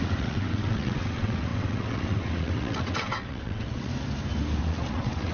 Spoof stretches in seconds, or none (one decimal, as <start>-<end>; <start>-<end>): 0.0-3.9; 4.6-5.3